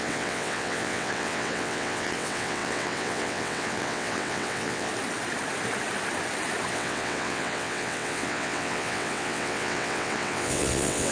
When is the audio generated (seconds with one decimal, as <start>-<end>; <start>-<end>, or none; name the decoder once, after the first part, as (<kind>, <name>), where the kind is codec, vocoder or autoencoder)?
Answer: 0.0-4.9 (vocoder, WaveNeXt); 6.7-11.1